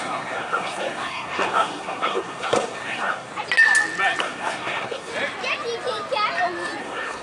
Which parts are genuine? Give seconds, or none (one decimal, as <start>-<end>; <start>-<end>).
3.3-4.2; 5.1-6.8